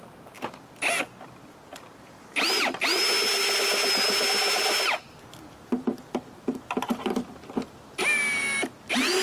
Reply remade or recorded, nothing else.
recorded